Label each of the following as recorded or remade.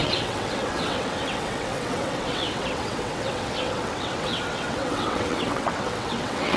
remade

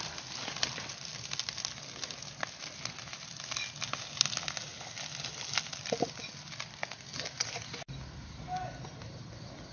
recorded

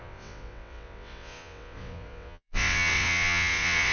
remade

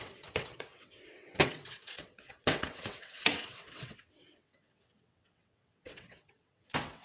remade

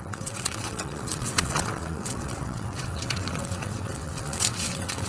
remade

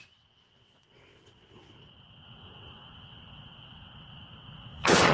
remade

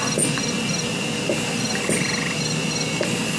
recorded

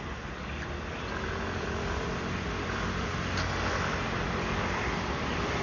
recorded